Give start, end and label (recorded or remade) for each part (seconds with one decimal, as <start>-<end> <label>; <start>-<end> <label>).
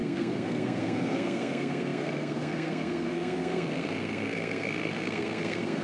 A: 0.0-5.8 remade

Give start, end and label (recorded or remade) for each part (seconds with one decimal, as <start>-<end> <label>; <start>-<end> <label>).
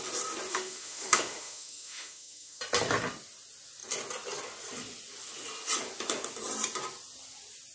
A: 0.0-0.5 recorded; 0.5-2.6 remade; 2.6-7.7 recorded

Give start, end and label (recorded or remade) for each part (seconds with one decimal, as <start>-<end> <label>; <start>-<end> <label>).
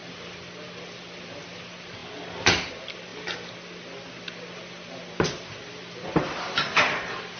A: 0.0-7.4 recorded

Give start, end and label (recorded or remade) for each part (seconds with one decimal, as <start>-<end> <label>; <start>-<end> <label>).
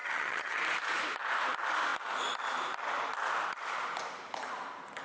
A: 0.0-0.6 remade; 0.6-5.0 recorded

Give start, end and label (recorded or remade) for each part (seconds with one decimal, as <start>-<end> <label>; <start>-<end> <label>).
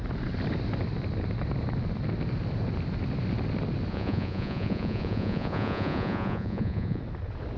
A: 0.0-3.9 recorded; 3.9-7.0 remade; 7.0-7.6 recorded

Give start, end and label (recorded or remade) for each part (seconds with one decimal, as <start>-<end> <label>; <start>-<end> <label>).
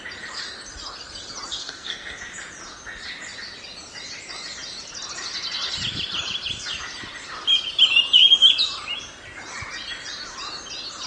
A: 0.0-1.5 recorded; 1.5-2.2 remade; 2.2-11.1 recorded